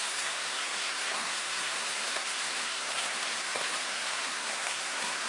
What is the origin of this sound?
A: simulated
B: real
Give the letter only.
A